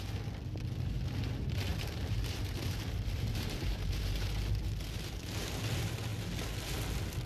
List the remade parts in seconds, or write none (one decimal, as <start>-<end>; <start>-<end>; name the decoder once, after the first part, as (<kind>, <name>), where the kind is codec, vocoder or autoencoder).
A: 1.7-5.4 (vocoder, BigVGAN v2)